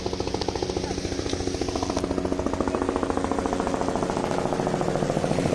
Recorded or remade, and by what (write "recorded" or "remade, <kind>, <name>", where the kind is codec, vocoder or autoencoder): recorded